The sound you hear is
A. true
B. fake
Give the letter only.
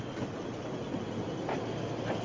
A